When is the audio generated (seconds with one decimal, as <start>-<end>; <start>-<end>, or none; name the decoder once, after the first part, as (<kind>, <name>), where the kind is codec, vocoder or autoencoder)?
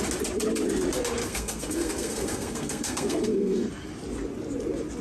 1.2-3.7 (codec, SNAC)